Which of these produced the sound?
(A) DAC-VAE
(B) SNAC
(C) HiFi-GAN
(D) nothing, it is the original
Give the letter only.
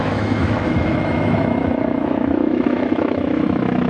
A